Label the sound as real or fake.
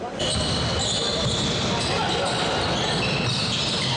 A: real